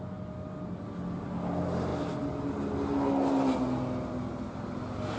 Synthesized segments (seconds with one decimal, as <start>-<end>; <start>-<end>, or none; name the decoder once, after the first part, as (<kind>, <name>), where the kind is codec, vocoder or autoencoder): none